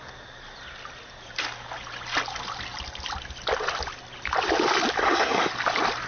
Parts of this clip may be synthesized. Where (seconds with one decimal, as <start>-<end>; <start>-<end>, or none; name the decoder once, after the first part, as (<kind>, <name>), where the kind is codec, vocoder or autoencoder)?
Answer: 5.0-5.5 (codec, SNAC)